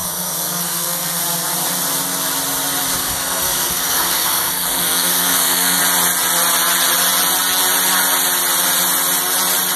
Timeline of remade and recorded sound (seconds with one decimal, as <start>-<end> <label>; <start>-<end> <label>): 0.0-1.2 remade; 1.2-3.0 recorded; 3.0-5.8 remade; 5.8-9.8 recorded